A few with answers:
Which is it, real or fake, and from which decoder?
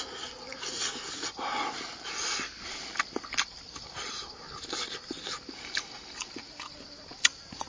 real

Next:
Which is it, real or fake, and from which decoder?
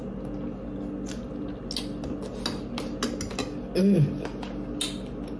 real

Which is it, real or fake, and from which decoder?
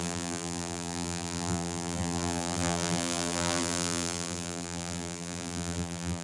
fake, vocoder, BigVGAN v2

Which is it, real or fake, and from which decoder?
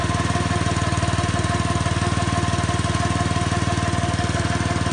real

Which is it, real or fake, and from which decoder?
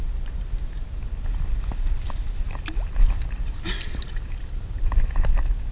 fake, vocoder, BigVGAN v2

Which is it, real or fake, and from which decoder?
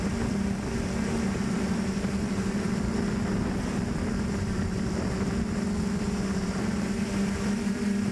fake, vocoder, BigVGAN v2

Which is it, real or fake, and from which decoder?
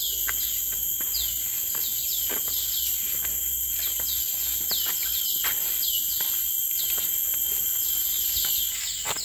real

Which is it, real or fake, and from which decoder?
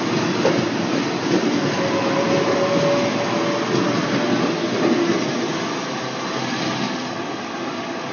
real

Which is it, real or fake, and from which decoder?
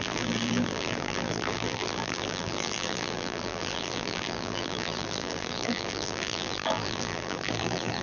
fake, vocoder, BigVGAN v2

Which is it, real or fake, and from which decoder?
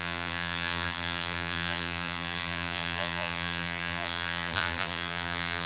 fake, vocoder, BigVGAN v2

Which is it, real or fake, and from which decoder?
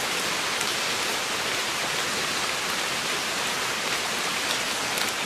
fake, vocoder, BigVGAN v2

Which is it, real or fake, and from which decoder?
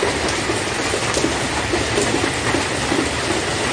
real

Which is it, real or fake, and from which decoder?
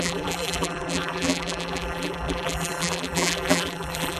fake, vocoder, BigVGAN v2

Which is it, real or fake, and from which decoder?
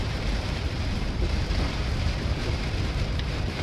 fake, vocoder, BigVGAN v2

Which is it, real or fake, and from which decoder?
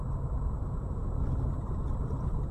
real